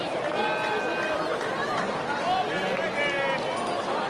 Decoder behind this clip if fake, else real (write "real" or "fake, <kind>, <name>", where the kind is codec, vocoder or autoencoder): real